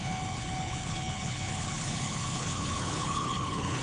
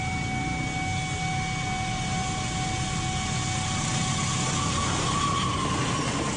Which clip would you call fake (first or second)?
first